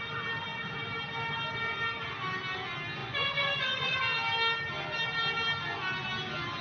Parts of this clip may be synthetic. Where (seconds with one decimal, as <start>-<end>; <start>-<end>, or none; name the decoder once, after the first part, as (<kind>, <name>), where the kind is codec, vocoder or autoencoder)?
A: 3.0-4.0 (vocoder, Vocos)